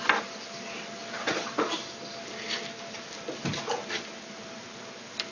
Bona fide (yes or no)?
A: yes